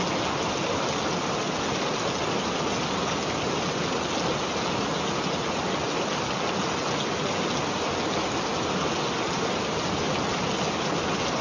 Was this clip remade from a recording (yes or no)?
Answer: no